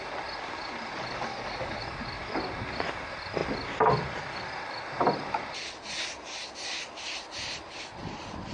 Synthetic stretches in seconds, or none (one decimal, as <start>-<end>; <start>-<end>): 1.3-1.8